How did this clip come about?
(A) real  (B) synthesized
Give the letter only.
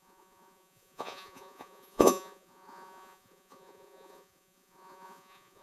B